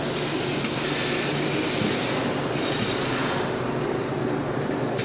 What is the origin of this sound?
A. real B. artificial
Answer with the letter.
A